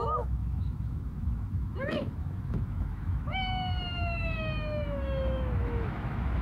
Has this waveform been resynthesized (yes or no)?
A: yes